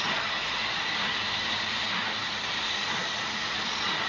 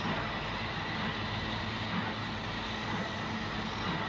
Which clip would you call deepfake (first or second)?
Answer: first